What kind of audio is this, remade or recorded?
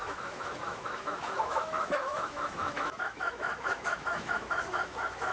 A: remade